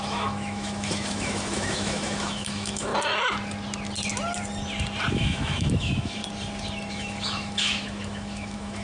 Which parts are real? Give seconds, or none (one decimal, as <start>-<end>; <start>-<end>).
2.9-5.1; 6.2-6.9